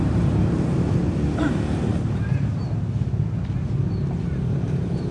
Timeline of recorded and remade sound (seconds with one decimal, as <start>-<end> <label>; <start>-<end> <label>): 0.0-0.4 remade; 0.4-1.4 recorded; 1.4-1.9 remade; 1.9-4.6 recorded; 4.6-5.1 remade